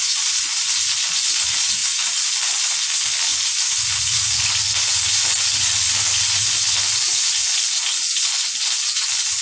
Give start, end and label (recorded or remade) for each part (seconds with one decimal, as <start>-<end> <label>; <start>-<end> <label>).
0.0-9.4 recorded